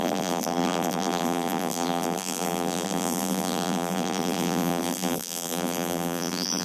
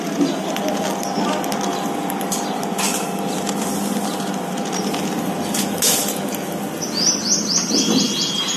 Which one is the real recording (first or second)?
second